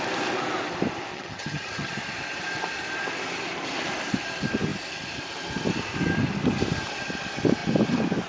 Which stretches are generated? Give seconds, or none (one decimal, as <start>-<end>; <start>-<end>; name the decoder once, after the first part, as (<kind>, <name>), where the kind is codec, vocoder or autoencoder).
1.1-1.9 (vocoder, HiFi-GAN)